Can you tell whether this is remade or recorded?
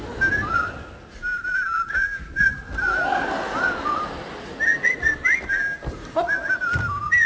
recorded